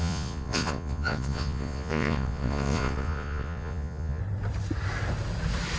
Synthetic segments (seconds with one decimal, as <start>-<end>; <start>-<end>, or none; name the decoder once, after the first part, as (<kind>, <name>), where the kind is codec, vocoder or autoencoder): 0.0-4.2 (vocoder, Vocos)